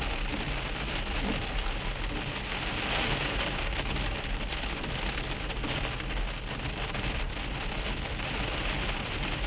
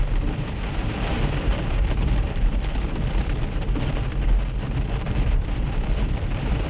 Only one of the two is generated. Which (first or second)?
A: second